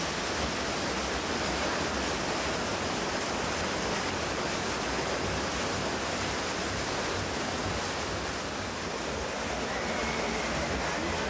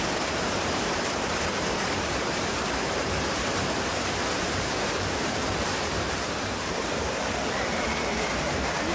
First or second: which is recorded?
first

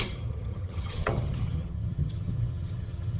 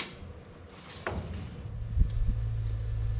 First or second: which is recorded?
second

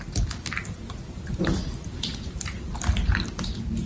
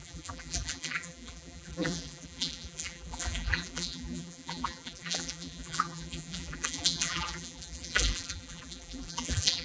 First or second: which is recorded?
first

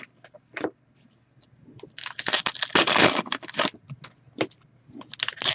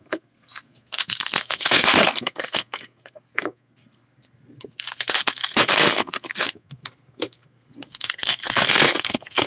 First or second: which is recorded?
first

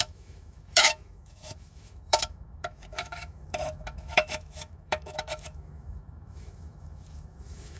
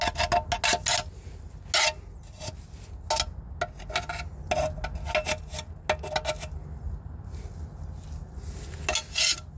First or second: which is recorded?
second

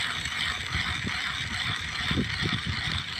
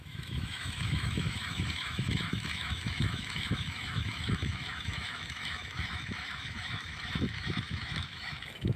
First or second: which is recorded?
first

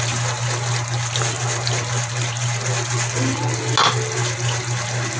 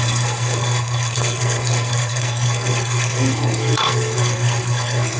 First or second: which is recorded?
first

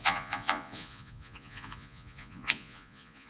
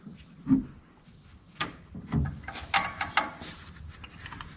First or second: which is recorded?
second